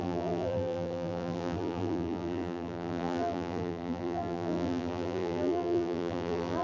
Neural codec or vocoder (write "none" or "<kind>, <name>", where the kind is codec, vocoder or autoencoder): vocoder, BigVGAN v2